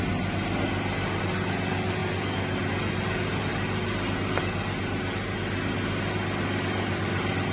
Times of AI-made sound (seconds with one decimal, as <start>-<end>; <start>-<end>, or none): none

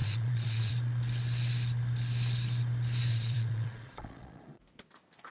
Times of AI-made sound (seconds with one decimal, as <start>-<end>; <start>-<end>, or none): 0.0-0.7; 3.1-4.6

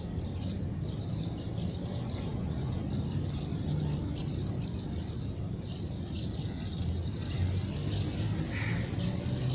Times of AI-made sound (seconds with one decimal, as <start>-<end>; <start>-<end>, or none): 2.3-2.9